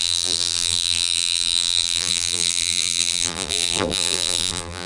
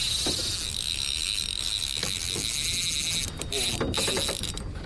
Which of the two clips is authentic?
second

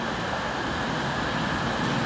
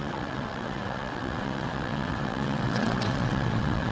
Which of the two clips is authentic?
first